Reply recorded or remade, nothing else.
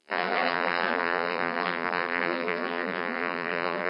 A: remade